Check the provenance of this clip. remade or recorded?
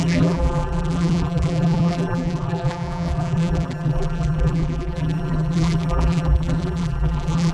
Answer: remade